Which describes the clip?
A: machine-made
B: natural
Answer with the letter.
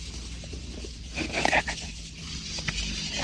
B